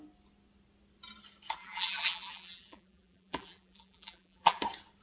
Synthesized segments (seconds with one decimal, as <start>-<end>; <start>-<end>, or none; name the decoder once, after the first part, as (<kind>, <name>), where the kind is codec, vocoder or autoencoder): 1.6-4.6 (vocoder, BigVGAN v2)